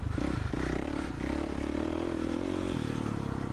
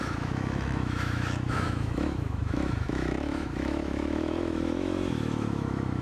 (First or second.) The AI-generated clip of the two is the second